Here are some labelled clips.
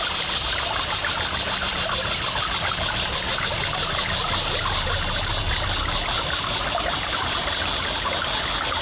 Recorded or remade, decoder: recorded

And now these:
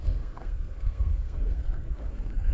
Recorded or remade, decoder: remade, codec, SNAC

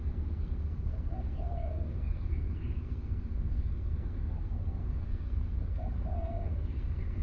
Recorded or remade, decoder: remade, codec, SNAC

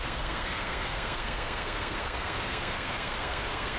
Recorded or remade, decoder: remade, codec, SNAC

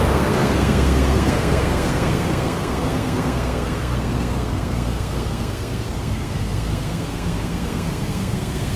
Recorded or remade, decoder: remade, codec, SNAC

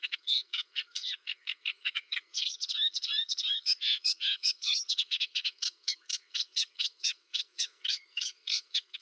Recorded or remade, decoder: remade, codec, SNAC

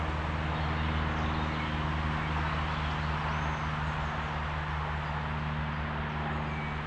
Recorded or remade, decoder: recorded